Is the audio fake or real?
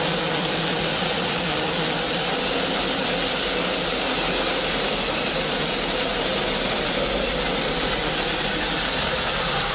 real